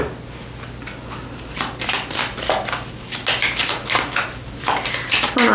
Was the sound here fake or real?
real